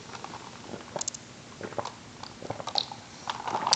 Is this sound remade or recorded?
recorded